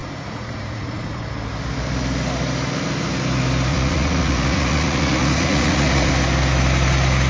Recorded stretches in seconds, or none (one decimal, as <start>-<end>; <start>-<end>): 1.2-3.7; 6.1-7.3